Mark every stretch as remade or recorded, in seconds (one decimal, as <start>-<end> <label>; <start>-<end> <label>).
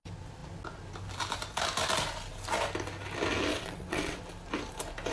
0.0-3.5 recorded; 3.5-4.2 remade; 4.2-5.1 recorded